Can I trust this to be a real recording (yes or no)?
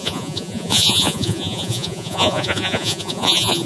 no